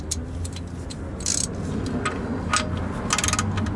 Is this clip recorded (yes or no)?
yes